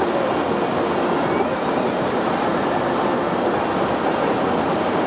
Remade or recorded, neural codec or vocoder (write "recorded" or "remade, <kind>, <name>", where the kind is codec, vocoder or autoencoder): recorded